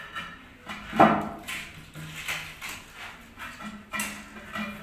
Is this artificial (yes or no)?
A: no